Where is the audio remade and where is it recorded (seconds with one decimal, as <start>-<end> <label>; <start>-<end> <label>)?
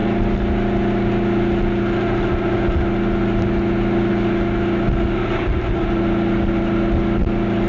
0.0-7.7 recorded